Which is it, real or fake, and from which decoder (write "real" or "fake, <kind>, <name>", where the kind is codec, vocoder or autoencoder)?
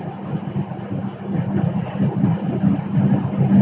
real